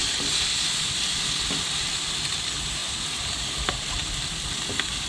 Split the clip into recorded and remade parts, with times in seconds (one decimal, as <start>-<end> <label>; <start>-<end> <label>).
0.0-5.1 recorded

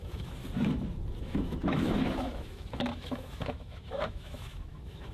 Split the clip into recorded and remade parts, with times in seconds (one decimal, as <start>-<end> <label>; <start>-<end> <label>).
0.0-0.4 remade; 0.4-1.2 recorded; 1.2-5.1 remade

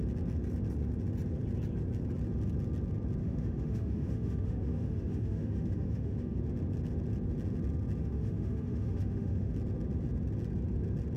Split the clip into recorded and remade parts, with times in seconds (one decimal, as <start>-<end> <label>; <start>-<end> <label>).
0.0-3.2 recorded; 3.2-6.4 remade; 6.4-8.0 recorded; 8.0-9.5 remade; 9.5-11.2 recorded

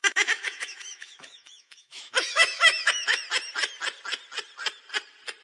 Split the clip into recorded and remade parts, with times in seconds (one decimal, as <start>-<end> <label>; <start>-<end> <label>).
0.0-3.2 remade; 3.2-5.4 recorded

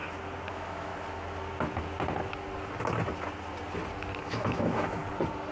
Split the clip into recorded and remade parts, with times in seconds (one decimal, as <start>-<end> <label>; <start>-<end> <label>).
0.0-0.5 recorded; 0.5-0.9 remade; 0.9-4.2 recorded; 4.2-5.0 remade; 5.0-5.5 recorded